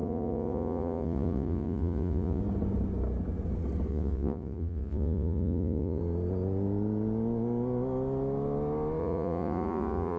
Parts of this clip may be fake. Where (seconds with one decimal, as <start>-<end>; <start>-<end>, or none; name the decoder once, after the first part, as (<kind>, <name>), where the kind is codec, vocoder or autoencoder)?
0.0-2.4 (vocoder, Vocos); 3.9-6.0; 9.0-10.2